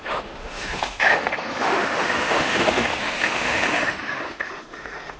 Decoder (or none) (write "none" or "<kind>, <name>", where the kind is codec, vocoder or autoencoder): autoencoder, DAC-VAE